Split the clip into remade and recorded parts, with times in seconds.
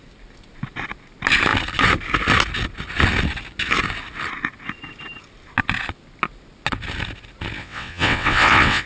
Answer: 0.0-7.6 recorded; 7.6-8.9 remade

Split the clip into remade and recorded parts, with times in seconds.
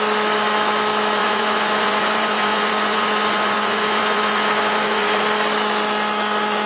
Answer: 0.0-1.2 recorded; 1.2-5.2 remade; 5.2-6.7 recorded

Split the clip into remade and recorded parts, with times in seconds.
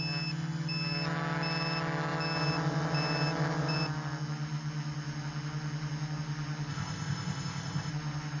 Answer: 0.0-6.7 recorded; 6.7-7.9 remade; 7.9-8.4 recorded